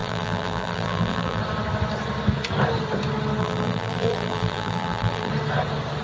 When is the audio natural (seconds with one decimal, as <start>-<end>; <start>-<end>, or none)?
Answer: 1.4-3.4; 5.3-6.0